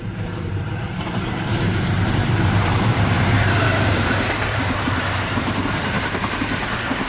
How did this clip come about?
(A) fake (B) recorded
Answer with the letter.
A